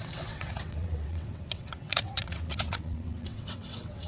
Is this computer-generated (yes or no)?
yes